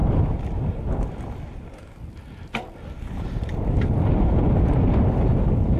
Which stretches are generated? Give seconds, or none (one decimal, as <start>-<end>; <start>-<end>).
none